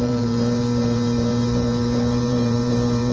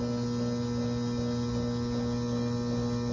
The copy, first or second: first